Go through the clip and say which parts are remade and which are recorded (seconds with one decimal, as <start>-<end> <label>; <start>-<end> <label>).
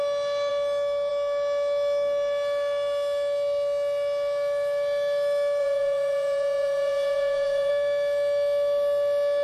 0.0-5.6 recorded; 5.6-7.7 remade; 7.7-9.4 recorded